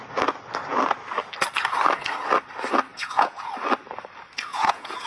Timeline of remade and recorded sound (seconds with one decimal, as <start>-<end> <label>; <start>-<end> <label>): 0.0-2.9 recorded; 2.9-3.5 remade; 3.5-4.5 recorded; 4.5-5.1 remade